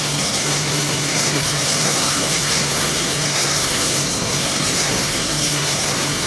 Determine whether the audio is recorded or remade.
remade